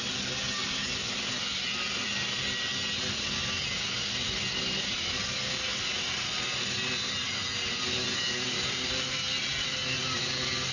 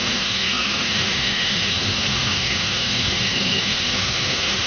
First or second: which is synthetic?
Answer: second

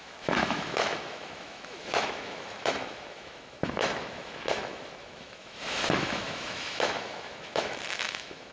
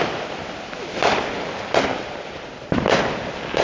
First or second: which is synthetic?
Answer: first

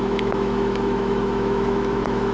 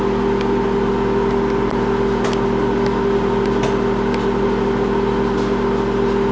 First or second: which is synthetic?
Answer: first